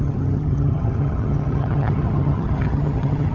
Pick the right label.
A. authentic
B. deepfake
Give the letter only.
B